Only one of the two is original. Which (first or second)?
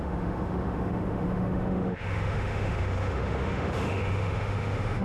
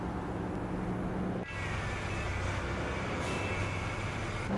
second